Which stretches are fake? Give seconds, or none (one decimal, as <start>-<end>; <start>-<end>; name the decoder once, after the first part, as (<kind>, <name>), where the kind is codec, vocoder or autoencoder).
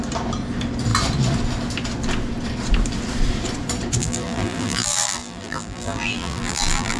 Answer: 4.0-7.0 (vocoder, BigVGAN v2)